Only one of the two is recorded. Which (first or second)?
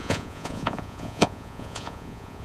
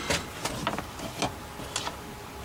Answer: second